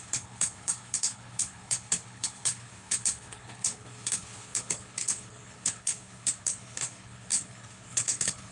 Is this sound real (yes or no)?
no